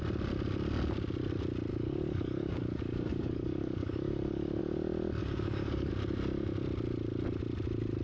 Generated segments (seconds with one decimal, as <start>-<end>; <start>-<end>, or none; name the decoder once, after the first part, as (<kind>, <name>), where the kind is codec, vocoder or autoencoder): 1.7-4.6 (codec, DAC); 5.2-5.9